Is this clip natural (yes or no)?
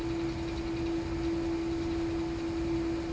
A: yes